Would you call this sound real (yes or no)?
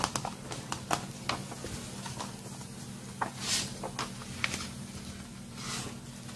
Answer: yes